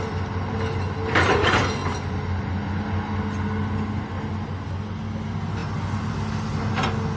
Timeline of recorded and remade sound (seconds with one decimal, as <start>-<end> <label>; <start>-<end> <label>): 0.0-7.2 recorded